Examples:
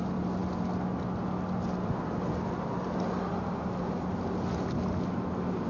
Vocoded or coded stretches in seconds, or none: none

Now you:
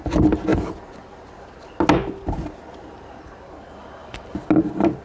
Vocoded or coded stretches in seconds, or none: none

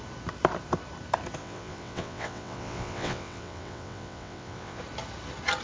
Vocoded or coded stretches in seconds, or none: 1.4-4.8 (vocoder, WaveNeXt)

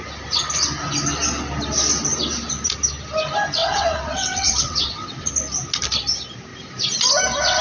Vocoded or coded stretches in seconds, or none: 3.6-5.3 (vocoder, WaveNeXt)

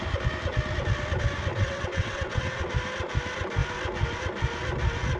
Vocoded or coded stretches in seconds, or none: 1.5-2.7 (vocoder, WaveNeXt)

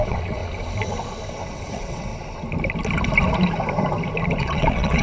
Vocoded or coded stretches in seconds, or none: 0.0-0.4 (vocoder, WaveNeXt); 1.3-2.1; 4.4-5.0

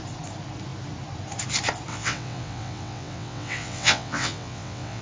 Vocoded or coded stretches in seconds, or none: 1.9-5.0 (vocoder, WaveNeXt)

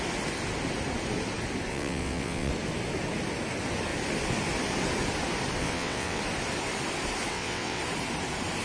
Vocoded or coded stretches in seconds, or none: 1.7-2.5 (vocoder, WaveNeXt); 5.6-6.2; 7.3-7.8